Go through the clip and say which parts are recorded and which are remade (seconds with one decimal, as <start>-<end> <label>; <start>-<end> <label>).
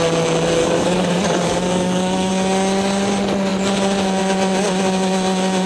0.0-0.6 recorded; 0.6-2.3 remade; 2.3-5.7 recorded